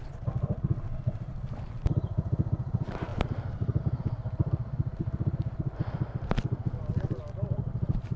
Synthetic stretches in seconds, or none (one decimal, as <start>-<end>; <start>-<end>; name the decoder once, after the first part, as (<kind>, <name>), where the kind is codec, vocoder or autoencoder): none